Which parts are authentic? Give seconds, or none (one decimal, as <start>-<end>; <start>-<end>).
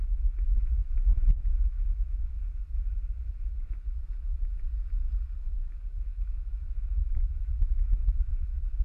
0.0-0.8; 2.3-6.1; 8.3-8.8